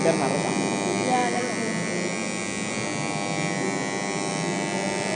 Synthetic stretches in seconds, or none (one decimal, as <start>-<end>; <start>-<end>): none